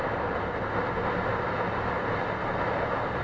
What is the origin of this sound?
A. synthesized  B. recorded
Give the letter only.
B